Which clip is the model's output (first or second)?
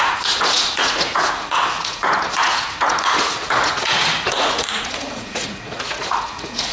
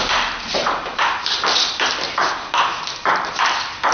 first